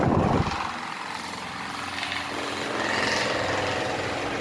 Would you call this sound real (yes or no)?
yes